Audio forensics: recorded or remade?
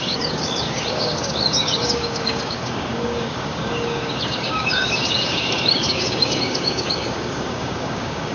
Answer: remade